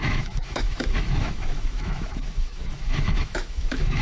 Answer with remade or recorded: remade